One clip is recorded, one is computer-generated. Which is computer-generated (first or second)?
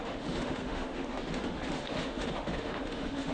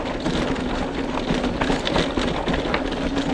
first